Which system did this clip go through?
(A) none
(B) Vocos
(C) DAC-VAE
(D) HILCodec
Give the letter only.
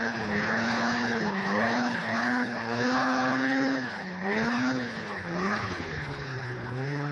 D